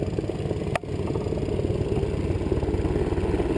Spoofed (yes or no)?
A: no